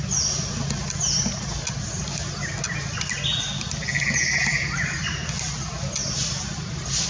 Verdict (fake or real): real